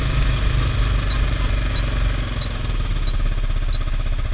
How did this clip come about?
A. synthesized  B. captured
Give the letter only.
B